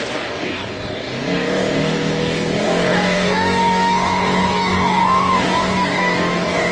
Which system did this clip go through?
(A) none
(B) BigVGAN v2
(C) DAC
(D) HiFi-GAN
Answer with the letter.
C